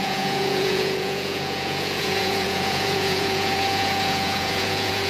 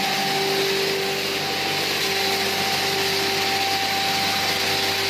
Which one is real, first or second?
second